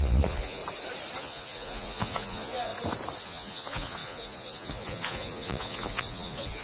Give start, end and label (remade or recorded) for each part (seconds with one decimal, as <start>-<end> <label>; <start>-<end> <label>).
0.0-0.6 remade; 0.6-1.2 recorded; 1.2-2.7 remade; 2.7-3.2 recorded; 3.2-6.6 remade